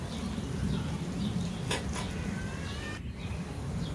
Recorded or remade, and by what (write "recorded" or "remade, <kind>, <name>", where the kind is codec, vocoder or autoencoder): recorded